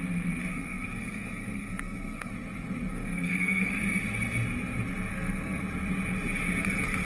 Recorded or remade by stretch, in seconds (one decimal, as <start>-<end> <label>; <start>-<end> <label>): 0.0-0.5 recorded; 0.5-2.3 remade; 2.3-2.9 recorded; 2.9-3.8 remade; 3.8-5.1 recorded; 5.1-5.6 remade; 5.6-7.0 recorded